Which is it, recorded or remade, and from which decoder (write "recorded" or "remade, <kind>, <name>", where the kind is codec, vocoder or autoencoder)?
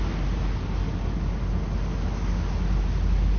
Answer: recorded